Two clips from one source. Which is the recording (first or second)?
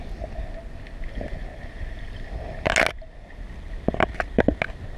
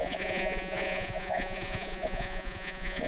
first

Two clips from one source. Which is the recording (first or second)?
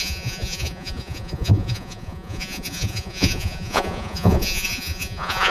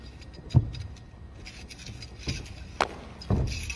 second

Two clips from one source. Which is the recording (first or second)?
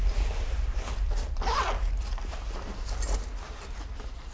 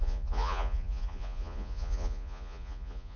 first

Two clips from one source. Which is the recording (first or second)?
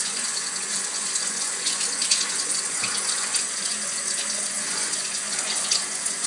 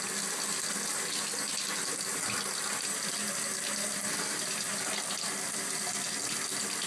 second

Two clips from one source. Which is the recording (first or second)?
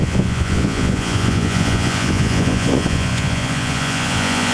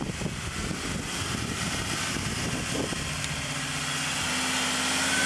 second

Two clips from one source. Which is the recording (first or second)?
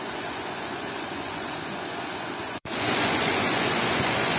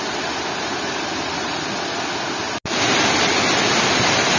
second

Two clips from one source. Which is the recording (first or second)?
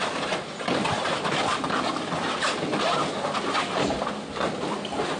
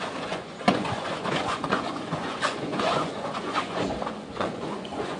first